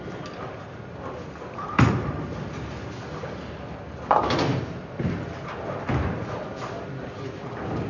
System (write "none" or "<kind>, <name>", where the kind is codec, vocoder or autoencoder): none